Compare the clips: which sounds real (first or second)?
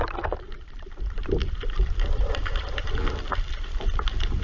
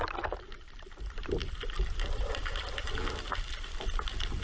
second